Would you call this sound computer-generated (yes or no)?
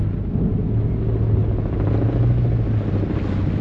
no